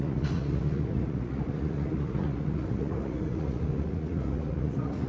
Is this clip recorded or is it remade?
remade